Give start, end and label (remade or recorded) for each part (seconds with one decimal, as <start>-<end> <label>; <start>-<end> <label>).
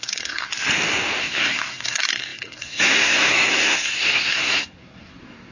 0.0-0.5 remade; 0.5-1.2 recorded; 1.2-5.5 remade